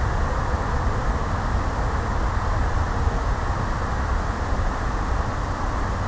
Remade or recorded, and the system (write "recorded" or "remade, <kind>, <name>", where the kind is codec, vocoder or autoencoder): recorded